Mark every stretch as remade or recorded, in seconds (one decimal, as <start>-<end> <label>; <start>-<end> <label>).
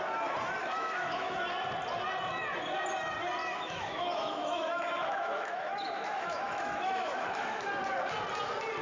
0.0-0.6 recorded; 0.6-1.4 remade; 1.4-3.4 recorded; 3.4-7.7 remade; 7.7-8.8 recorded